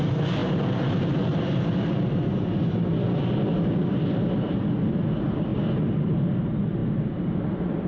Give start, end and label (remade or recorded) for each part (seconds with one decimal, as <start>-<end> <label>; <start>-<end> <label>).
0.0-6.8 recorded; 6.8-7.4 remade; 7.4-7.9 recorded